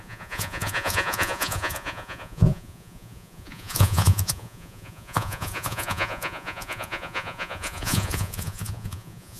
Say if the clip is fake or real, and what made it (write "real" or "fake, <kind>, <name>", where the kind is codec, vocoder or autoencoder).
fake, vocoder, Vocos